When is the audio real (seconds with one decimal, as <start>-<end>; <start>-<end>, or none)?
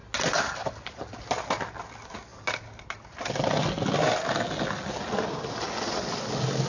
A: 0.0-6.7